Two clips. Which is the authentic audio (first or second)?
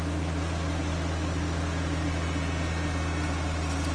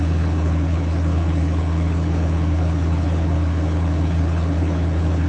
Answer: first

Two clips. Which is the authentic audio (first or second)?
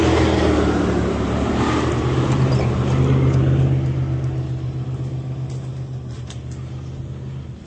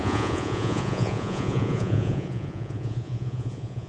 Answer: first